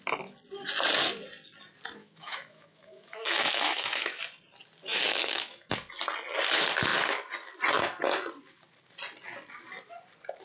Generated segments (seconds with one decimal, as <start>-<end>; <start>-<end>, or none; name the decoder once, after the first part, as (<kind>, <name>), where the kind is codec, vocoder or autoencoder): 2.0-4.2 (autoencoder, DAC-VAE); 4.9-5.7